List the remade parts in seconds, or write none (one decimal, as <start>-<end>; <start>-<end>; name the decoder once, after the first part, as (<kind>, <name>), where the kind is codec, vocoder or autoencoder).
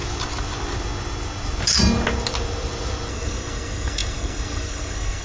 3.1-5.2 (codec, SNAC)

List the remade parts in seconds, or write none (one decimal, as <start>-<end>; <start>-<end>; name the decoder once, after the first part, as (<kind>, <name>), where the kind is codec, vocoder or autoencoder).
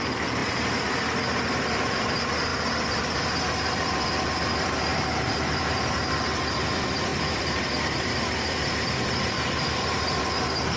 0.0-10.8 (vocoder, BigVGAN v2)